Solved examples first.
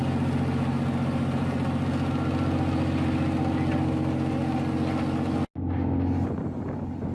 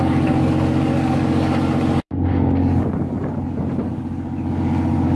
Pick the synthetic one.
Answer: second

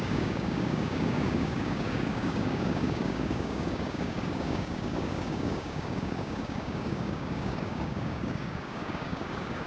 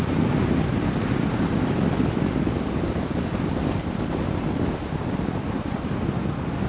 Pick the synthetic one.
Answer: first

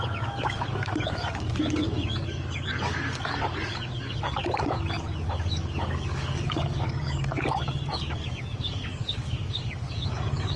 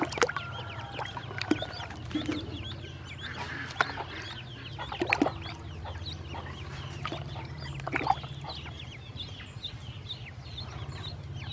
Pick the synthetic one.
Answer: first